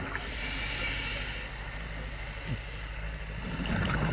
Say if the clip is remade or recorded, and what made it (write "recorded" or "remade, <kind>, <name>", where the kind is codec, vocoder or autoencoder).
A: recorded